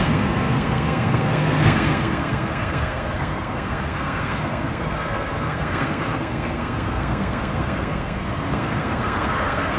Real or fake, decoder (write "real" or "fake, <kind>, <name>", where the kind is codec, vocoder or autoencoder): fake, codec, SNAC